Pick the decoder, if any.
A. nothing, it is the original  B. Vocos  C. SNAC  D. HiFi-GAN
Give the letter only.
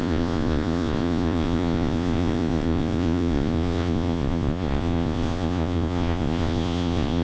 B